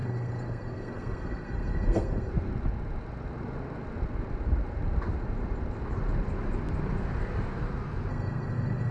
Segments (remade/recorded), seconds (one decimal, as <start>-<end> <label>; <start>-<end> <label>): 0.0-2.3 remade; 2.3-8.1 recorded; 8.1-8.9 remade